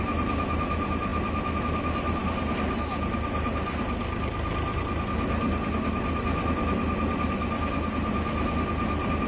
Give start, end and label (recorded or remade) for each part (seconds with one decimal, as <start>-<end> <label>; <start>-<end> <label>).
0.0-9.3 recorded